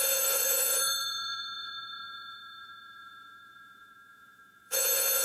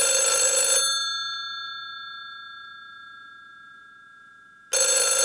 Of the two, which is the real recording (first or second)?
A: second